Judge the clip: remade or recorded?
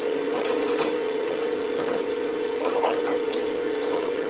remade